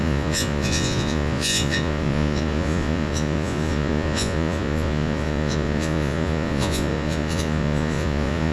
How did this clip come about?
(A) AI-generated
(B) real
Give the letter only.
A